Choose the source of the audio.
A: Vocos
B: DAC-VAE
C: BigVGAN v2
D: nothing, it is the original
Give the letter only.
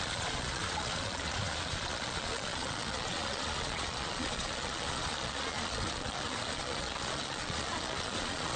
A